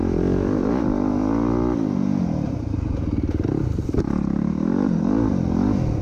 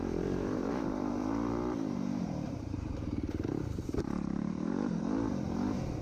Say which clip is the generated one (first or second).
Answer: second